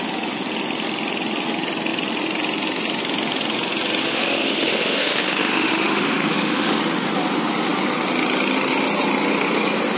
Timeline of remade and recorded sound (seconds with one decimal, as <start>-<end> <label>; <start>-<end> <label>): 0.0-4.0 recorded; 4.0-6.8 remade; 6.8-10.0 recorded